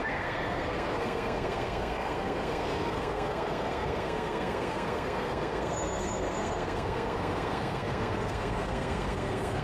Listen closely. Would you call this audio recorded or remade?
remade